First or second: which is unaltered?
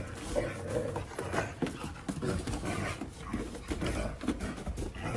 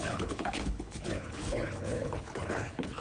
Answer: first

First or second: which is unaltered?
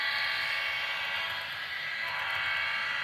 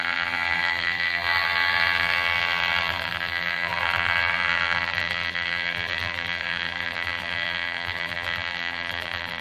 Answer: first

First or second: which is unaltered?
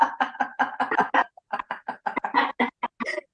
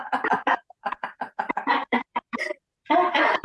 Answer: first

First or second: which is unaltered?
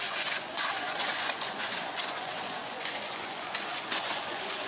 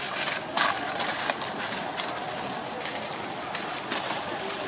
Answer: second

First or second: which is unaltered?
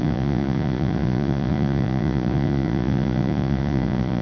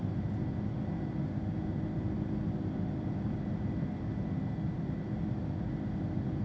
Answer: second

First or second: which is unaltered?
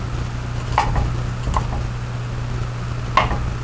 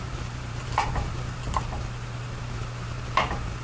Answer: first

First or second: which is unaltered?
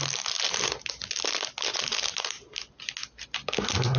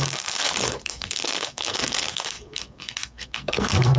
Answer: first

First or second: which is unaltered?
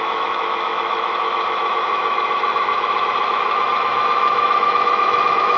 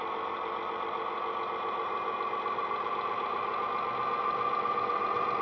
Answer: second